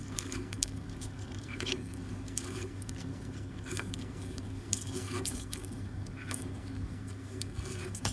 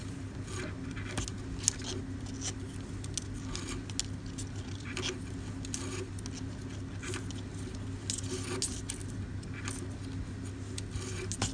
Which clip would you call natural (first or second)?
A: second